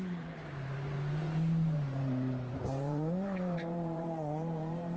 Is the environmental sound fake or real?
fake